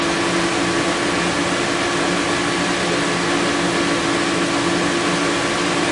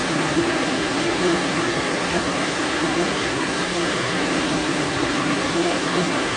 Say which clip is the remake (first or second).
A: second